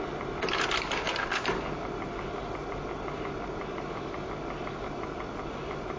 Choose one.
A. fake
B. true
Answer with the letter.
B